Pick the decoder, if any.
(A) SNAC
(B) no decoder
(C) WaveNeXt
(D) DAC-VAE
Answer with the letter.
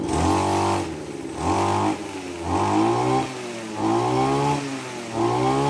B